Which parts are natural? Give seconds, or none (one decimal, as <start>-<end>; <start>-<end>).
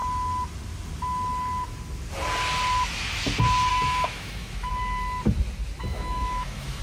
0.0-3.7; 4.7-5.9